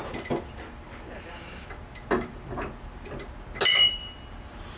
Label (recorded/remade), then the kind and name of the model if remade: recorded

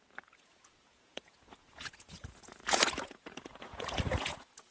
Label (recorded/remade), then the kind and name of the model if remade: remade, vocoder, Vocos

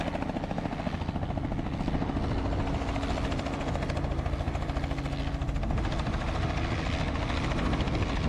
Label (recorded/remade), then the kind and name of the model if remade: recorded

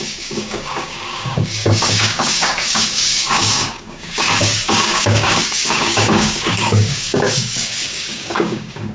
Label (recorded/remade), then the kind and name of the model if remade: remade, codec, DAC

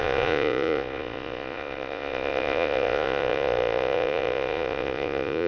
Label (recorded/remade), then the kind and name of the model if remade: remade, vocoder, Vocos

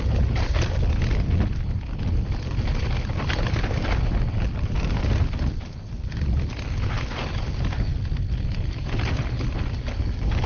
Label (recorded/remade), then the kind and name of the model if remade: recorded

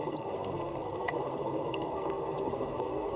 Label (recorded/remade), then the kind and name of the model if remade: remade, codec, SNAC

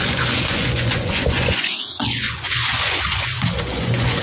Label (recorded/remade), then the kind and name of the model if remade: remade, vocoder, Vocos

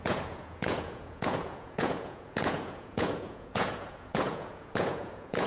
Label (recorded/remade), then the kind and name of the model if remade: remade, vocoder, Vocos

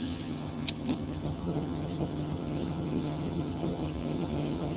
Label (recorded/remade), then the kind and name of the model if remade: remade, vocoder, HiFi-GAN